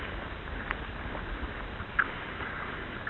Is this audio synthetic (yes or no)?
no